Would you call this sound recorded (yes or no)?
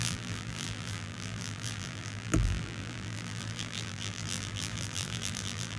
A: no